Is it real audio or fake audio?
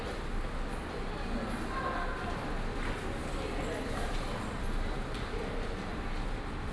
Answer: real